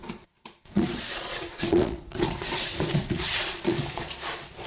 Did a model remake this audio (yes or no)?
yes